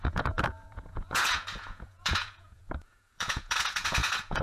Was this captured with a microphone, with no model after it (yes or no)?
no